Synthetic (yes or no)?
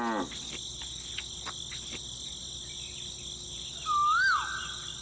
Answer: no